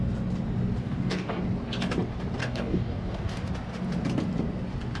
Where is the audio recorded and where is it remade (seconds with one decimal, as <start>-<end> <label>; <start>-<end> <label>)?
0.0-0.8 recorded; 0.8-1.4 remade; 1.4-2.4 recorded; 2.4-3.5 remade; 3.5-5.0 recorded